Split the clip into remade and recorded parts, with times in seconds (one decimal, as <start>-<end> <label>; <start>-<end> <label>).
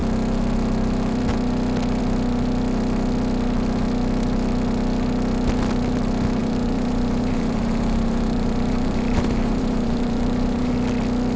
0.0-6.4 recorded; 6.4-10.7 remade; 10.7-11.4 recorded